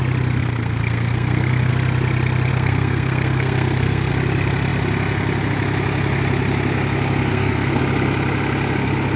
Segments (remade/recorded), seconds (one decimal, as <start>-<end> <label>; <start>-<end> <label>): 0.0-0.4 recorded; 0.4-1.7 remade; 1.7-2.5 recorded; 2.5-4.1 remade; 4.1-7.3 recorded; 7.3-7.8 remade; 7.8-9.2 recorded